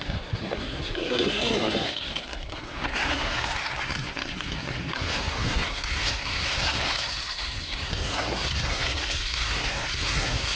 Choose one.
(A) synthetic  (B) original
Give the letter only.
A